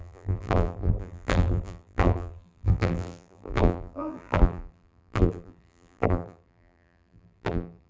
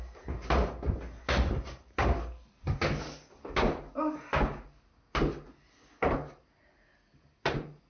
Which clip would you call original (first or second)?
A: second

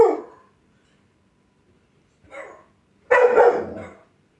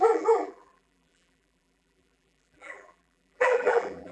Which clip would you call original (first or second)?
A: first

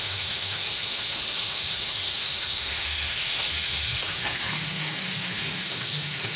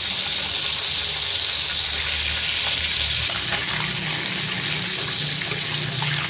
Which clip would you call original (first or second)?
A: second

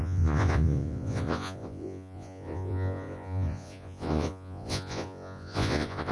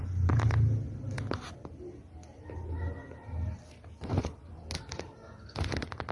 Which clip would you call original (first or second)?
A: second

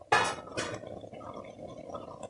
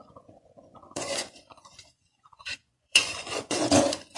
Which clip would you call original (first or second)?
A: first